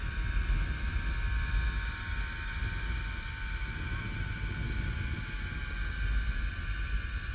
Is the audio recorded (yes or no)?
yes